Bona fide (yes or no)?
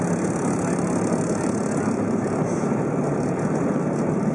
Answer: no